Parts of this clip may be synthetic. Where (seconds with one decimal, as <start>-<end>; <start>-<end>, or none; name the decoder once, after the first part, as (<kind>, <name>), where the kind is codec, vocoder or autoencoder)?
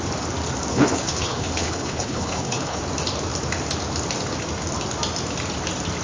0.7-2.8 (codec, HILCodec)